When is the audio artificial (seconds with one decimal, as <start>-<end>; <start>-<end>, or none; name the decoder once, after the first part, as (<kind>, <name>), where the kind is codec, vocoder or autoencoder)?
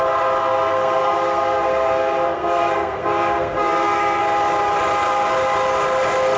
0.4-4.2 (codec, SNAC)